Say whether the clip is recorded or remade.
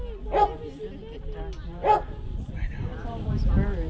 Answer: recorded